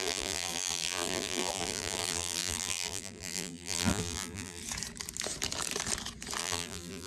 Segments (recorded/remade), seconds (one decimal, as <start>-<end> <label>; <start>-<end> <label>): 0.0-4.6 remade; 4.6-6.4 recorded; 6.4-7.1 remade